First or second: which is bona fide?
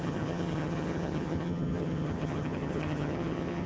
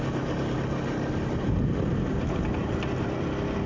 second